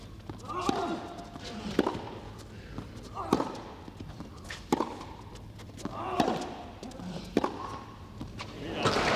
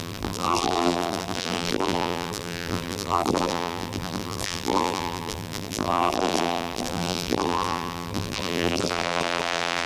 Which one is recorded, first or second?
first